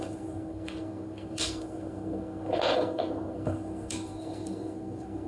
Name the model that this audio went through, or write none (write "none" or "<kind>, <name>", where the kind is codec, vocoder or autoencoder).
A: codec, SNAC